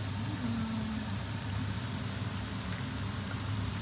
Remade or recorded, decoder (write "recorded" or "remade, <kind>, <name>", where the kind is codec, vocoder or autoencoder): recorded